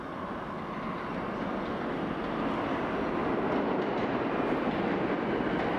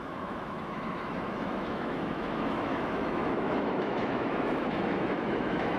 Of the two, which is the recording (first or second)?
first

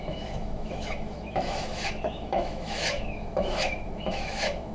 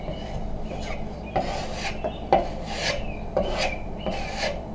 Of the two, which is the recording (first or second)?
second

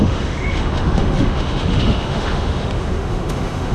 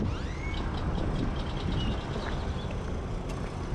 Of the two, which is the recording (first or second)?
second